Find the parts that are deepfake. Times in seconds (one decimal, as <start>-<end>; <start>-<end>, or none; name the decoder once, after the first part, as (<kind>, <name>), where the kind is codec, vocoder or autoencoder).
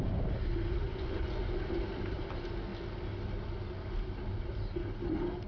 0.9-1.6 (vocoder, Vocos)